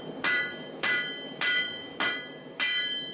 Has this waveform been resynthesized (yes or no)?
yes